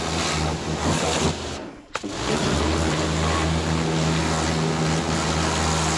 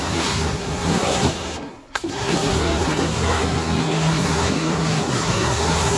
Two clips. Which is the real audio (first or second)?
first